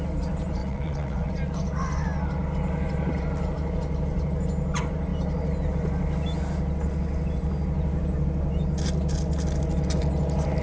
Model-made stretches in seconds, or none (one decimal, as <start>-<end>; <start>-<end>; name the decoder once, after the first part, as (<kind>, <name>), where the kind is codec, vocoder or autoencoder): 0.6-1.3 (vocoder, WaveNeXt)

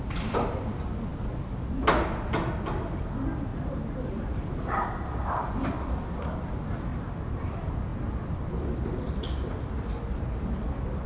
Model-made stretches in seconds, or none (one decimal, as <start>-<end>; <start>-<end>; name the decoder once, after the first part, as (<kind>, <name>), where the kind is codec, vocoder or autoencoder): 3.5-5.5 (vocoder, BigVGAN v2); 6.9-7.4

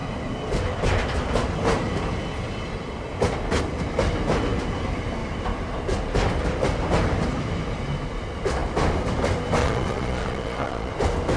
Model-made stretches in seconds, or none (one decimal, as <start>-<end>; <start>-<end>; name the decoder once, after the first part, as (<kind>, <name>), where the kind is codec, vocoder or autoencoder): 9.6-10.9 (vocoder, Vocos)

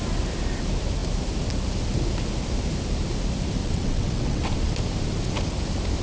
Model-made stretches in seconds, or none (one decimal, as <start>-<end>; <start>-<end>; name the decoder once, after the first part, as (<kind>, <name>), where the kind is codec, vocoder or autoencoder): 3.6-4.5 (vocoder, WaveNeXt)

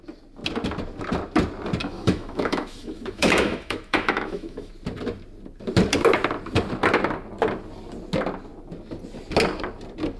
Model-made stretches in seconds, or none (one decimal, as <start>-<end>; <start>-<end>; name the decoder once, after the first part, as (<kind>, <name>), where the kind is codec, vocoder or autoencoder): 1.8-4.7 (autoencoder, DAC-VAE)